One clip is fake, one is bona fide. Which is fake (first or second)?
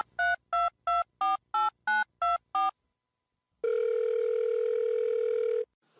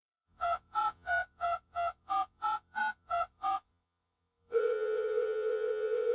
second